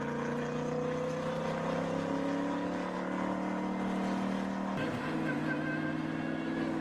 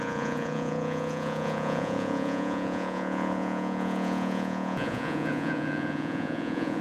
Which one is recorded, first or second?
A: first